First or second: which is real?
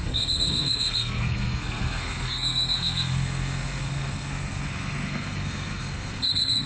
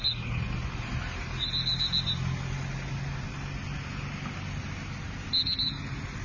second